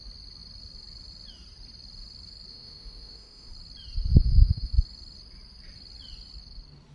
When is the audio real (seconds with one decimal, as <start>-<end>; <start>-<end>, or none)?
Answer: 0.0-2.5; 3.5-4.1; 4.7-6.9